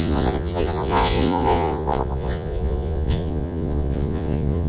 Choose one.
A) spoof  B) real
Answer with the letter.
A